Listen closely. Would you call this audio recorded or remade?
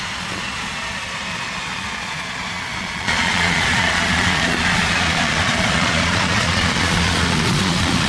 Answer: remade